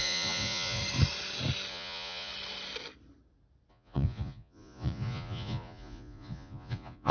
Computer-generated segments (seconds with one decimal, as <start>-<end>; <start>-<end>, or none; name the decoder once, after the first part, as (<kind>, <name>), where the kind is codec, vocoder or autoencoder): 0.0-0.8 (vocoder, Vocos); 1.7-2.3; 3.7-7.1